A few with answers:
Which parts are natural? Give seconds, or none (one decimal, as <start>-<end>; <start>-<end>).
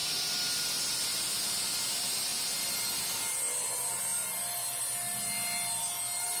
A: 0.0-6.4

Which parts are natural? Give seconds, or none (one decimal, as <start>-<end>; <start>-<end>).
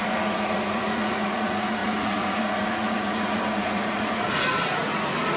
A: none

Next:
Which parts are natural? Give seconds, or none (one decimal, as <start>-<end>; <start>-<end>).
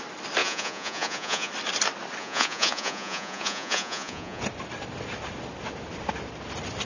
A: 0.0-0.4; 1.5-2.2; 4.4-6.9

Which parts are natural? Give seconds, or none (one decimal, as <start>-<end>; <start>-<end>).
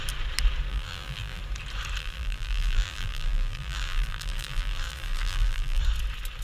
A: 0.0-0.7; 1.4-2.0; 5.8-6.4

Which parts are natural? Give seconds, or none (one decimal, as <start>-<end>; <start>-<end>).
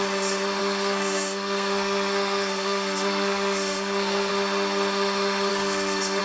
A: 0.0-0.6; 4.3-5.5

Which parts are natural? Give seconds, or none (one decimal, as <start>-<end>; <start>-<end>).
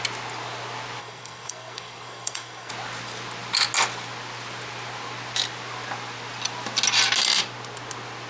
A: 0.0-1.0; 2.7-8.3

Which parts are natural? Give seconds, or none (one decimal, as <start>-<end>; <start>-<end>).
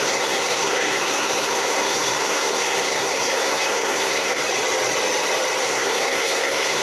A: 4.4-5.6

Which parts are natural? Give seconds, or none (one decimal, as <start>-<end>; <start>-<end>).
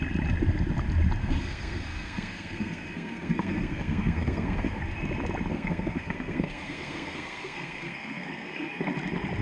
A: 0.0-1.2; 4.8-5.5; 8.8-9.4